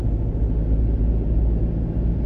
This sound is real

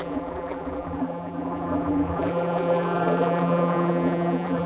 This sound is fake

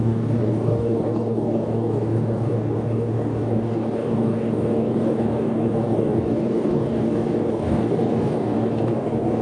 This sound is fake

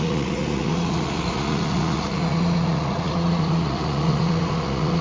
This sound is fake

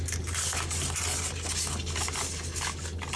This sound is real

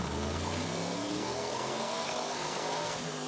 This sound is fake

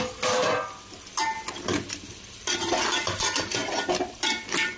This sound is real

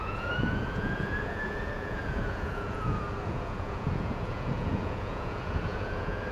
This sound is fake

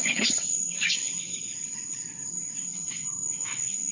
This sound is fake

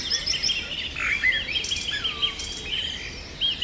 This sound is real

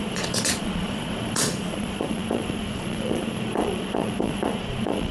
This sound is fake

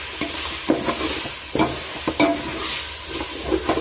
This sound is real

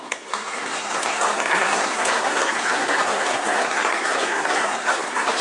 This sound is fake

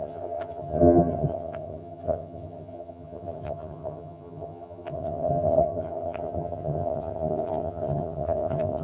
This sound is fake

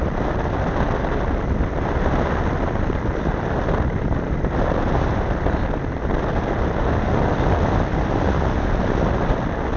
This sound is real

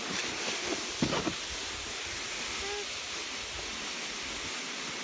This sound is real